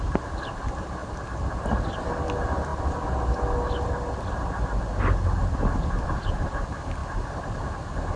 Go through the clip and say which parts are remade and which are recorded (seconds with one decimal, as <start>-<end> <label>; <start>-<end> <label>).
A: 0.0-1.0 recorded; 1.0-2.1 remade; 2.1-5.4 recorded; 5.4-6.6 remade; 6.6-7.0 recorded; 7.0-7.5 remade; 7.5-8.2 recorded